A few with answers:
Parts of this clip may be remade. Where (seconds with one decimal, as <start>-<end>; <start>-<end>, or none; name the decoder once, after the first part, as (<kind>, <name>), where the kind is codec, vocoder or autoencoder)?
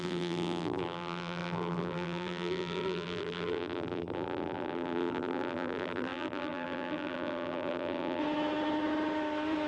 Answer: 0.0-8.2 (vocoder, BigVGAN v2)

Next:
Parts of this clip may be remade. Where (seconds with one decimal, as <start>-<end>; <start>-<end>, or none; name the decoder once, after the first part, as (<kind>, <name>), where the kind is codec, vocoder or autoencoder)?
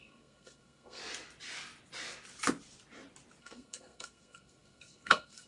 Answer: 0.0-1.0 (codec, SNAC); 3.4-5.5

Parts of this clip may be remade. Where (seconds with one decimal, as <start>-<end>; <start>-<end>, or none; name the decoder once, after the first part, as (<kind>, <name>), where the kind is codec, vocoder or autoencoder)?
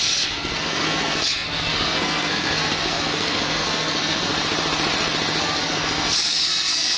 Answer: 0.0-4.3 (codec, SNAC); 5.4-7.0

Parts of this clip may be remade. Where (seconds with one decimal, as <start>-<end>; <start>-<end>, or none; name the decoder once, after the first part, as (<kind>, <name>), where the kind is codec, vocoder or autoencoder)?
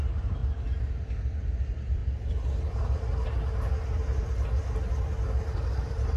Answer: 0.0-0.4 (vocoder, BigVGAN v2); 1.6-2.0; 5.7-6.2